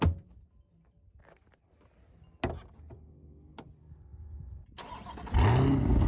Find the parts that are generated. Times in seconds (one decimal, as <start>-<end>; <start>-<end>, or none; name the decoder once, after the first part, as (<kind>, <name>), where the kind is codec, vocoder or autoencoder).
none